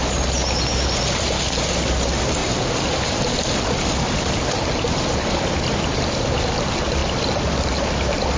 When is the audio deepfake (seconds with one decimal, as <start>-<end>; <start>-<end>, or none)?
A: none